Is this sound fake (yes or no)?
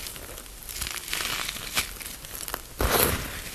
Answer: no